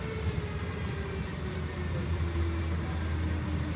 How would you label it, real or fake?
real